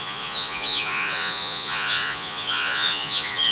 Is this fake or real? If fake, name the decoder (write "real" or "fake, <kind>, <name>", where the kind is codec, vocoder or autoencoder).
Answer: fake, vocoder, Vocos